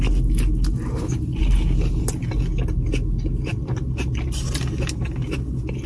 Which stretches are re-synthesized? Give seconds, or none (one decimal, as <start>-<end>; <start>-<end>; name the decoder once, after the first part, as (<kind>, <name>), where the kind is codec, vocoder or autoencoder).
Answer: none